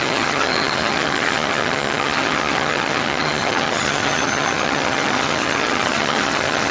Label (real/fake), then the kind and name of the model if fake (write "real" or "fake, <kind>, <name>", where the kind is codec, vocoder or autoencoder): fake, vocoder, HiFi-GAN